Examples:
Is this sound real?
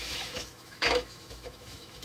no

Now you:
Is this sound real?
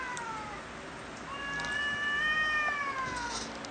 yes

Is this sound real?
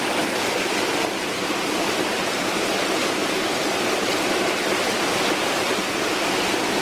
yes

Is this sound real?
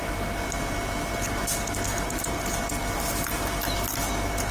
yes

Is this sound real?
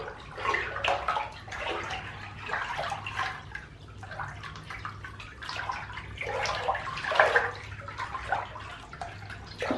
yes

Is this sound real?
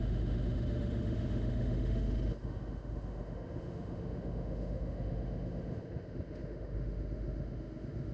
no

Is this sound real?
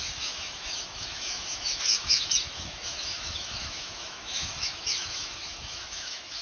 no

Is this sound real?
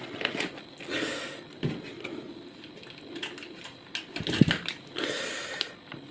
yes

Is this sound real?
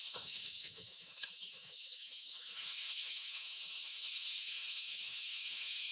no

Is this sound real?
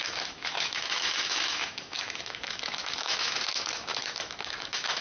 no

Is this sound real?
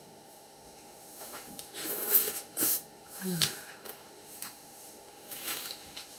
no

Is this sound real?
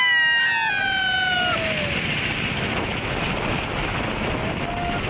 yes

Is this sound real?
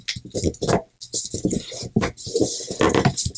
yes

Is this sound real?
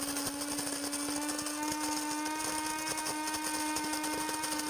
yes